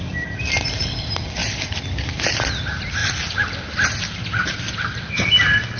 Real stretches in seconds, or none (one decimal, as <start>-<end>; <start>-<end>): 0.0-5.8

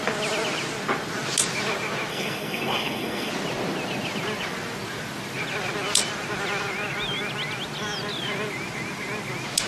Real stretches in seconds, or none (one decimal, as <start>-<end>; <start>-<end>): 0.0-2.1; 3.3-9.7

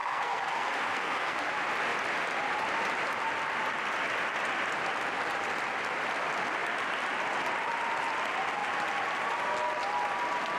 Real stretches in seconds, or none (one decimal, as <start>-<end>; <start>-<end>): 1.5-10.6

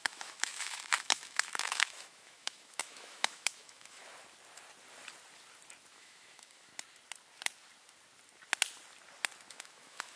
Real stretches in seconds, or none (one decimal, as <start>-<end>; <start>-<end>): 4.0-5.9; 6.7-9.5

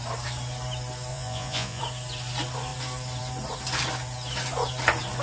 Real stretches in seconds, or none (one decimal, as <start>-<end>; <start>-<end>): 0.0-1.1; 1.8-5.2

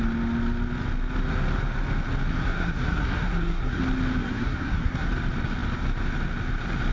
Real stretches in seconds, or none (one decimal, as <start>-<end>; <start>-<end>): 0.0-2.3; 3.8-4.2; 5.1-6.9

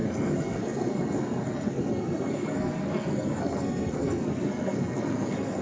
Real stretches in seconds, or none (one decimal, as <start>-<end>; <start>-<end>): none

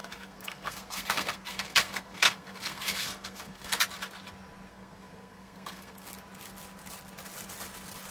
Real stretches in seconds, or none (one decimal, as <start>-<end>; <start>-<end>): 3.8-4.7; 6.1-8.1